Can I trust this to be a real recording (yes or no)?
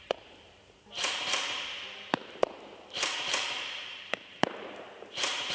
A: no